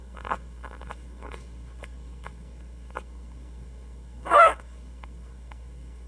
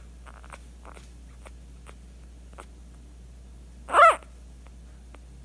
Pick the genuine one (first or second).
second